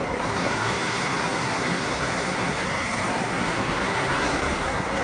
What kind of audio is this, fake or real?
fake